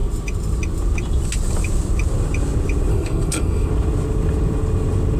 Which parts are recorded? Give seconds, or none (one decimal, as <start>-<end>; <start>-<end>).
0.0-2.9; 3.7-5.2